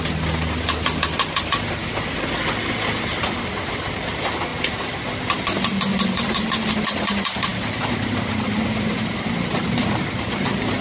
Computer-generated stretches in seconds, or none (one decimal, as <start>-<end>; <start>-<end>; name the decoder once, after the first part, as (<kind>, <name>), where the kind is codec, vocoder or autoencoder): none